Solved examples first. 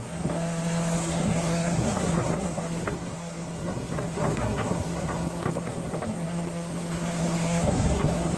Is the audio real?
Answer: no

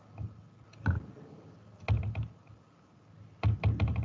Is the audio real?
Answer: yes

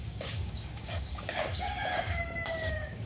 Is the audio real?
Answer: no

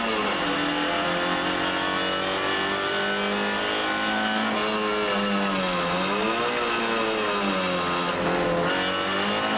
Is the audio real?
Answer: yes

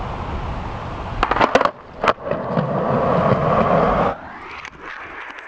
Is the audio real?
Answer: yes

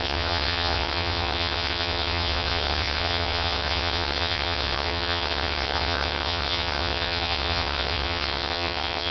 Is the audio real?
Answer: no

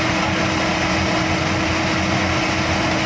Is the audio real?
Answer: yes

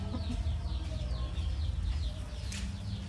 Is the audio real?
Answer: yes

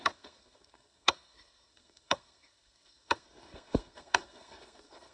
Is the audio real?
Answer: no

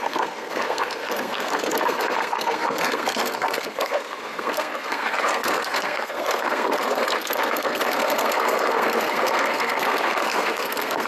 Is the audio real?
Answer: no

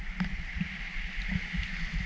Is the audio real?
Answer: yes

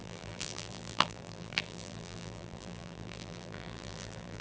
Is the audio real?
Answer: no